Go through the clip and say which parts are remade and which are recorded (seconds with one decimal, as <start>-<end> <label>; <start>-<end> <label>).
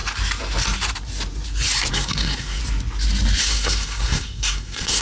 0.0-1.9 recorded; 1.9-2.6 remade; 2.6-3.4 recorded; 3.4-5.0 remade